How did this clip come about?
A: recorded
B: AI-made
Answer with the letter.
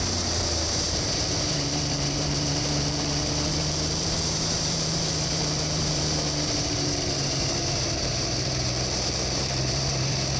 B